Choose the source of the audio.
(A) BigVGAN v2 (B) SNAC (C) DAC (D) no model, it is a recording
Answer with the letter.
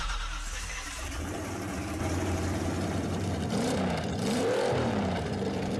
A